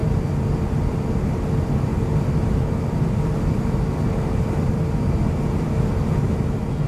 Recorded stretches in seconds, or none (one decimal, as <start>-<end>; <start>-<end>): 0.0-6.9